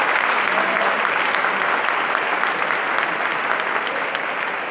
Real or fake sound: real